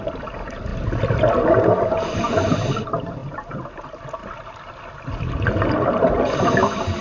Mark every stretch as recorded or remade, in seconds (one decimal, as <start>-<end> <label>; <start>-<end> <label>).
0.0-0.7 remade; 0.7-1.2 recorded; 1.2-4.2 remade; 4.2-5.7 recorded; 5.7-7.0 remade